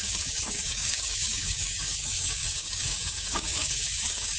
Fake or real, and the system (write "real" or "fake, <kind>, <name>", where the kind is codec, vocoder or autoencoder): fake, codec, DAC